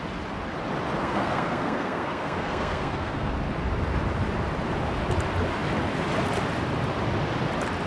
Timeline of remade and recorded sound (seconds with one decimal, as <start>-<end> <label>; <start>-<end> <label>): 0.0-1.0 recorded; 1.0-3.3 remade; 3.3-7.9 recorded